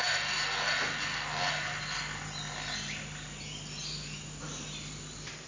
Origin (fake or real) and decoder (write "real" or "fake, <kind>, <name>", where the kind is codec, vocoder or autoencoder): real